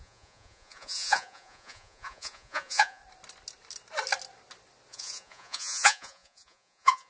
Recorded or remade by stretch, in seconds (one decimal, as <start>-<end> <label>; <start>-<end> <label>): 0.0-3.0 remade; 3.0-4.9 recorded; 4.9-7.1 remade